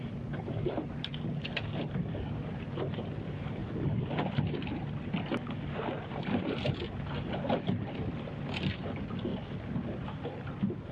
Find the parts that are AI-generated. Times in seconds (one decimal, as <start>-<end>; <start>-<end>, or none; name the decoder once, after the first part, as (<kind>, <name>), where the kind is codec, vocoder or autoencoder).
0.0-3.6 (vocoder, BigVGAN v2); 8.7-9.3